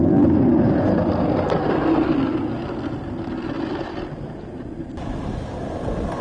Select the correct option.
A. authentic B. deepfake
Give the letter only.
A